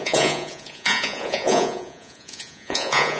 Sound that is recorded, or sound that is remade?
remade